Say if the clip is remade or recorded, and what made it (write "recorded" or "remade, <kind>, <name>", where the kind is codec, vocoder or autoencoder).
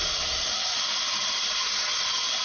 remade, vocoder, BigVGAN v2